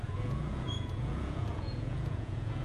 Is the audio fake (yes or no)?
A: yes